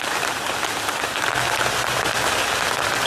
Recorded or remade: recorded